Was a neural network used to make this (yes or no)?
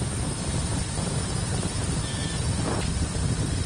no